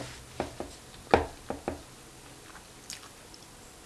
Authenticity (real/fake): real